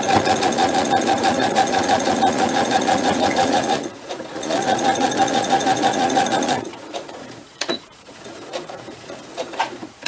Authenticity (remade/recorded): remade